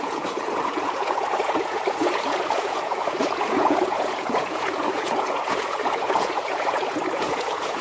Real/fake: fake